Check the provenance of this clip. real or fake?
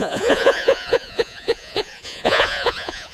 fake